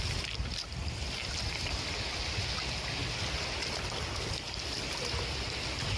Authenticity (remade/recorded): recorded